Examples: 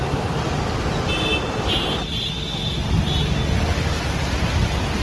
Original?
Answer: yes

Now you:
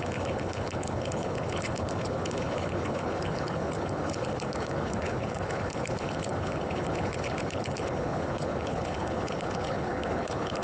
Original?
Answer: no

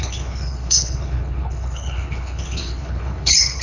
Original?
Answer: no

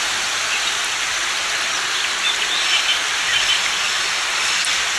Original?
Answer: yes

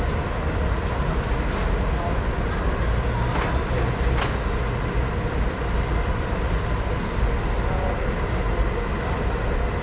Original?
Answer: yes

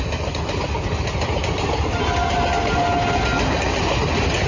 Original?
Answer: yes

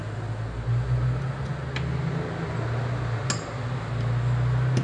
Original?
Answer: yes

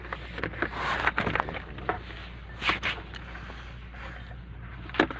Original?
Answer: yes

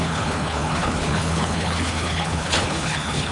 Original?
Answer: no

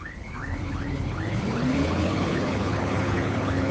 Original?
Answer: no